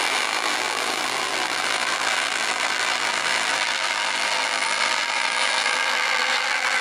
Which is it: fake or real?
fake